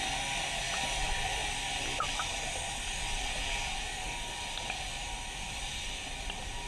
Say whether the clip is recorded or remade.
recorded